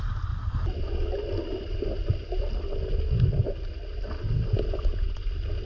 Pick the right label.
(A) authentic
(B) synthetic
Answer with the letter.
A